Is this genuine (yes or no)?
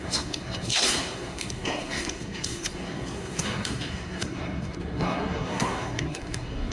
no